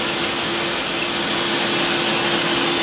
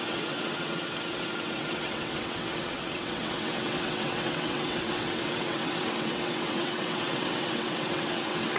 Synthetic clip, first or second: second